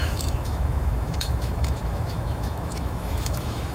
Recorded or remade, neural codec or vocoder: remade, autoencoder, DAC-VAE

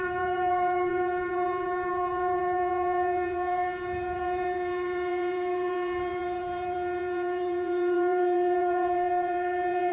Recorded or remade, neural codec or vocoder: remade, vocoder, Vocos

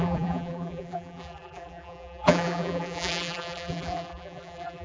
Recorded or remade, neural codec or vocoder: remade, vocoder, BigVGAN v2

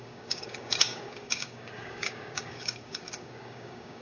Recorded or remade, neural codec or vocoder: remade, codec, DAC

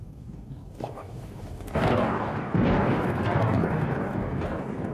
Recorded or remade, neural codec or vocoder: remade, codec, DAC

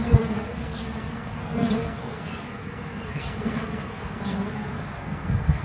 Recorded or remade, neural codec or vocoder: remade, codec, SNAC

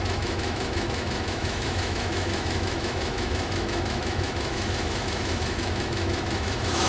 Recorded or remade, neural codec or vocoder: remade, autoencoder, DAC-VAE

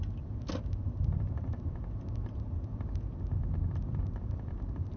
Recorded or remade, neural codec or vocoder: recorded